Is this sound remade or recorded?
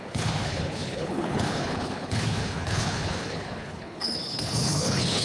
remade